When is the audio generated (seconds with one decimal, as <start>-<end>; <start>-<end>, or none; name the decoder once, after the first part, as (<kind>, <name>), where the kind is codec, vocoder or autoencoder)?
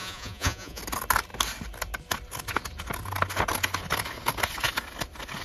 0.0-0.8 (vocoder, Vocos)